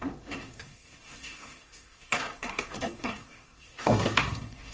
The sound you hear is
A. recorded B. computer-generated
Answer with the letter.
B